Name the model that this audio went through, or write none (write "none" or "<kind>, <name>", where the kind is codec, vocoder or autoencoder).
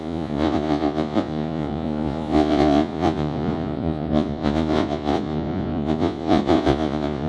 vocoder, Vocos